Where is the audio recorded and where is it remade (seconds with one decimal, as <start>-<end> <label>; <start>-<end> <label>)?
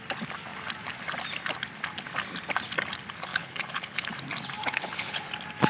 0.0-3.3 recorded; 3.3-4.1 remade; 4.1-4.6 recorded; 4.6-5.3 remade; 5.3-5.7 recorded